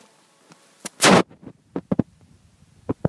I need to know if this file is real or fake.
real